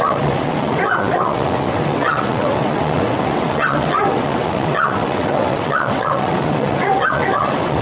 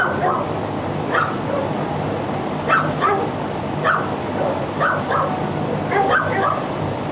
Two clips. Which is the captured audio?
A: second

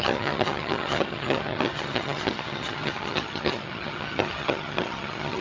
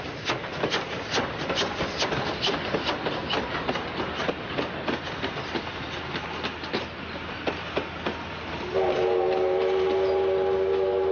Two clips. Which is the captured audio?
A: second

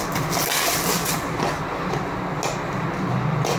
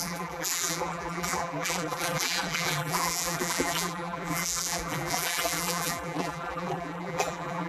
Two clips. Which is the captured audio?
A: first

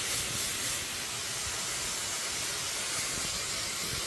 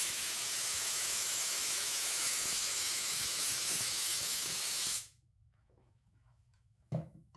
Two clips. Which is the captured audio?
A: first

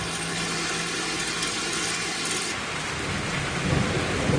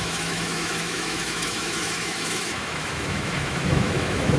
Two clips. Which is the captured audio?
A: first